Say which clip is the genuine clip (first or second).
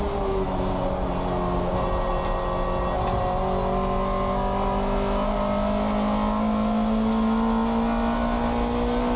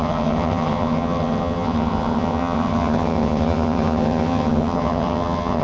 first